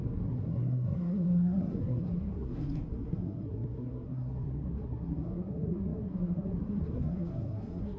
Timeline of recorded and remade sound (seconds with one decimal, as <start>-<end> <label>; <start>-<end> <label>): 0.0-8.0 remade